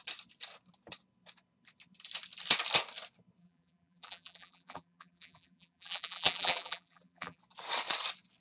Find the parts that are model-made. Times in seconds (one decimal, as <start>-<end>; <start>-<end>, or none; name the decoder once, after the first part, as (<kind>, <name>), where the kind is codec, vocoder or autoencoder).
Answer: 3.4-7.4 (vocoder, BigVGAN v2)